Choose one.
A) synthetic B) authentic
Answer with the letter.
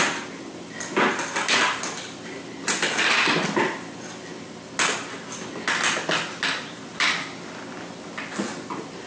B